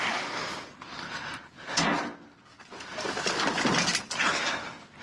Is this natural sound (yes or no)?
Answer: yes